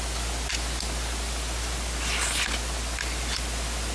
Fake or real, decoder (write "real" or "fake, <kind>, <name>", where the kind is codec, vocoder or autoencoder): real